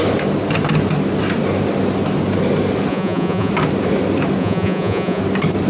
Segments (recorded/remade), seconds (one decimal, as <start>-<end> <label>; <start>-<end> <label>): 0.0-2.9 recorded; 2.9-3.5 remade; 3.5-4.4 recorded; 4.4-5.2 remade; 5.2-5.7 recorded

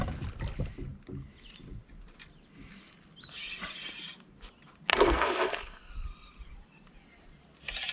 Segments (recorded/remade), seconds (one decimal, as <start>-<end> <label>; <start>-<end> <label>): 0.0-4.9 recorded; 4.9-5.9 remade; 5.9-7.9 recorded

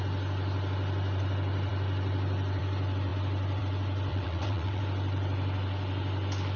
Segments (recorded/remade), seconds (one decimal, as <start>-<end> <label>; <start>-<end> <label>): 0.0-4.1 recorded; 4.1-4.8 remade; 4.8-6.6 recorded